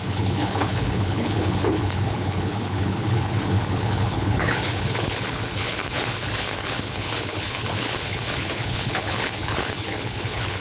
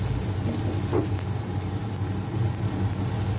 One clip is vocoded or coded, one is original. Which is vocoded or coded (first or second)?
first